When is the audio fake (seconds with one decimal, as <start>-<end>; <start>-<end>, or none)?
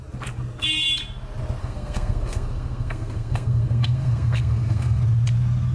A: 1.6-5.0